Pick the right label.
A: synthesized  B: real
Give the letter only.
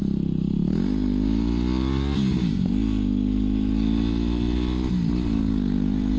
B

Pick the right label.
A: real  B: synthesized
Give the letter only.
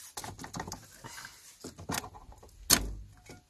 A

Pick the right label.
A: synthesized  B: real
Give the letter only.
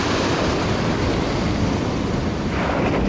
B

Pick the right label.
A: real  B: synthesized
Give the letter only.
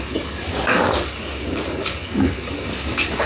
B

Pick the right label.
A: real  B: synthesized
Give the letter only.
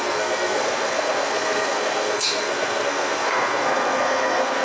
B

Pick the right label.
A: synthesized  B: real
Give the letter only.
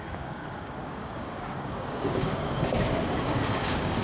A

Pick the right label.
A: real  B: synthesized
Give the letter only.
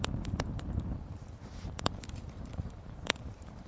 B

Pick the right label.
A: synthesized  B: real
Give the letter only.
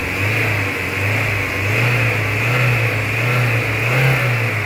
B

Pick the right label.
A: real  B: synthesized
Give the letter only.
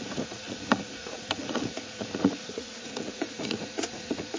B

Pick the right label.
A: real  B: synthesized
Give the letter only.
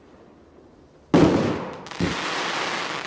A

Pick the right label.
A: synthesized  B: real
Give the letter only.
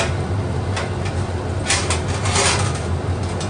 B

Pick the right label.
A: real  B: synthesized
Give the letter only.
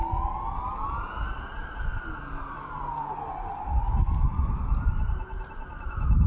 A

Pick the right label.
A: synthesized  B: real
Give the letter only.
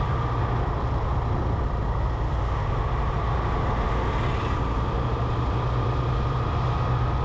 B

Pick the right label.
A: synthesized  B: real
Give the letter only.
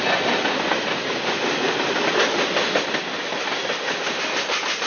B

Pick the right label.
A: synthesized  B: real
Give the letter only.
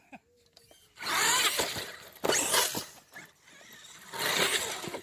B